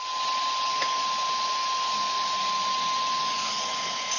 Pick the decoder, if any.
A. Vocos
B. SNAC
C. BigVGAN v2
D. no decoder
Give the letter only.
D